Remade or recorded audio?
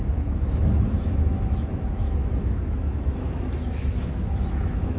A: remade